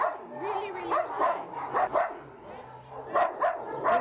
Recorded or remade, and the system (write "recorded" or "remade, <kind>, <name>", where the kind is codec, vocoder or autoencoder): recorded